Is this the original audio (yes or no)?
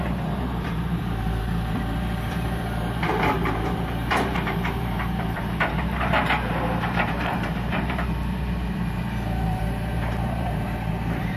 no